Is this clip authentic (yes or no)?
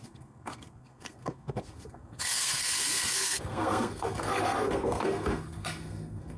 no